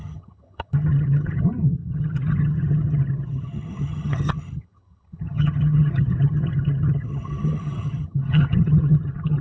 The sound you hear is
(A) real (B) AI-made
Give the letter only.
B